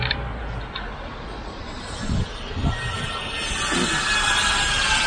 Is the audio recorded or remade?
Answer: recorded